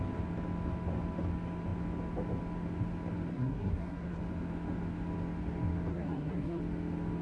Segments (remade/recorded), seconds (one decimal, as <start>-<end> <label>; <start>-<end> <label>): 0.0-3.3 recorded; 3.3-4.2 remade; 4.2-5.9 recorded; 5.9-6.6 remade; 6.6-7.2 recorded